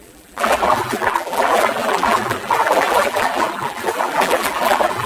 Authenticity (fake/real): fake